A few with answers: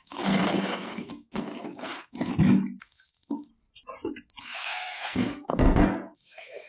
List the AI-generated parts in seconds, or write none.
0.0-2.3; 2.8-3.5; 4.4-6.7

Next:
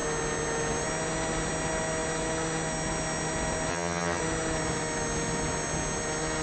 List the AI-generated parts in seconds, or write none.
3.7-4.2

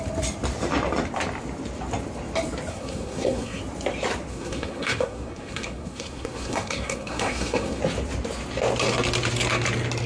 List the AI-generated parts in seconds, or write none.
2.7-3.6; 4.3-7.8